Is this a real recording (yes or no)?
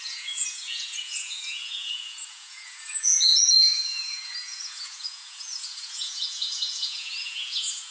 no